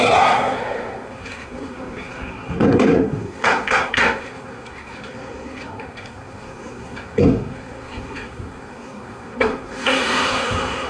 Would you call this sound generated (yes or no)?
yes